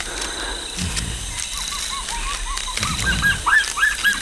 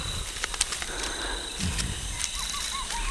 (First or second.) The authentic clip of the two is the first